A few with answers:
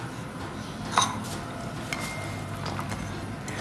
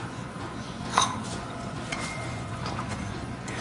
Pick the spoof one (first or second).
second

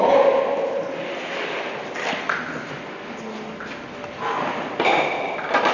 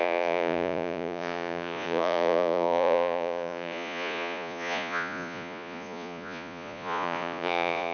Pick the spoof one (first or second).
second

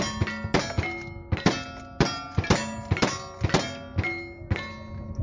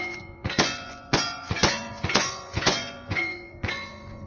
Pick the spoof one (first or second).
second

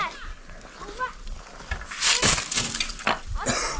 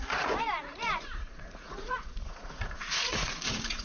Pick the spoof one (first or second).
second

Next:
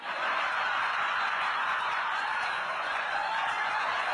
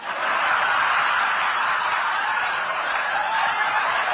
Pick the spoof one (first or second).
first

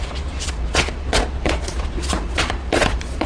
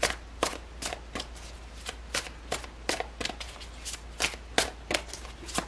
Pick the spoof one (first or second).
first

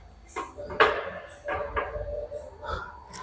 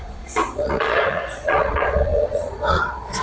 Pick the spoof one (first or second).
second